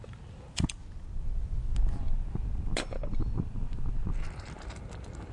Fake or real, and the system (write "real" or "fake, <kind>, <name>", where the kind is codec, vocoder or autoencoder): real